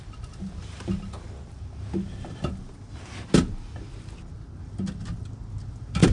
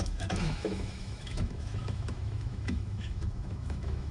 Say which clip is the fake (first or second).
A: second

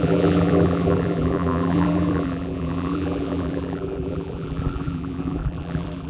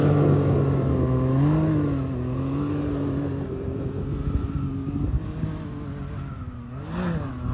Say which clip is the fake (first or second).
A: first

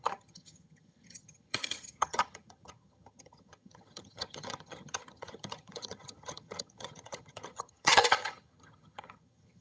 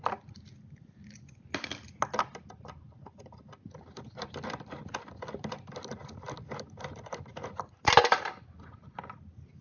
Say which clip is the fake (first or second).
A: first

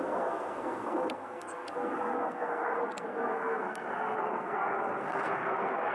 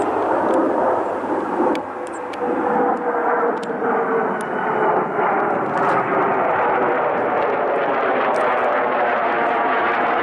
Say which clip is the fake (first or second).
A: first